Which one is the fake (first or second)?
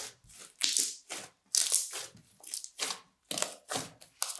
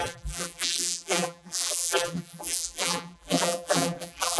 second